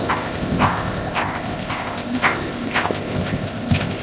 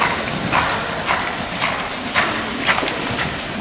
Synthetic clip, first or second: first